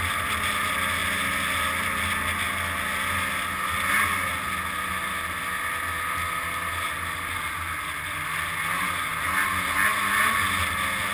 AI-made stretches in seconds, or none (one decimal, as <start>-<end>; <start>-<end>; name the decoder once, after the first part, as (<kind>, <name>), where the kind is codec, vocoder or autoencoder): none